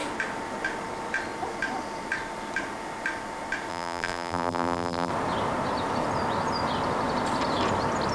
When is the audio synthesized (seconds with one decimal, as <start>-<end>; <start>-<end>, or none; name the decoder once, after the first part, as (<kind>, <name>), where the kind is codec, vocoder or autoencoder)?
3.7-5.1 (vocoder, BigVGAN v2)